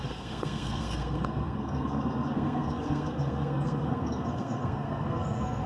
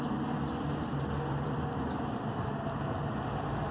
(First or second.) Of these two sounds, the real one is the second